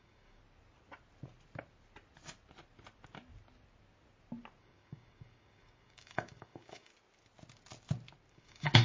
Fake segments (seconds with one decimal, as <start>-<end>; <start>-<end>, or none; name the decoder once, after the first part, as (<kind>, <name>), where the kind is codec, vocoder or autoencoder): 0.0-0.4 (codec, DAC); 4.6-6.9; 8.3-8.8